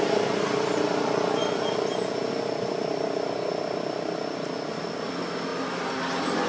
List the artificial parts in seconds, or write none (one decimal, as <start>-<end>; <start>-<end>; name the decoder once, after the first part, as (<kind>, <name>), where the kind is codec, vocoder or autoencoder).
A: none

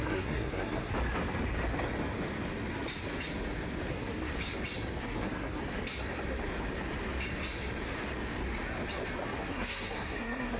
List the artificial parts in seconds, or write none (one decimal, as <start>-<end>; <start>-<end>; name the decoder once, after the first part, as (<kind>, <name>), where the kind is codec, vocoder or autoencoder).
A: 0.0-0.9 (codec, SNAC); 3.9-4.3; 5.0-5.6; 9.4-10.6